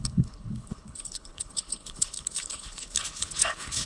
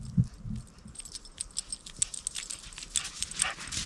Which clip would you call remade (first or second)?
first